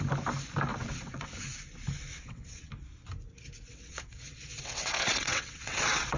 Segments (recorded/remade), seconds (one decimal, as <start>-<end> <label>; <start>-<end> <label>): 0.0-0.7 recorded; 0.7-1.3 remade; 1.3-2.1 recorded; 2.1-2.7 remade; 2.7-3.7 recorded; 3.7-6.2 remade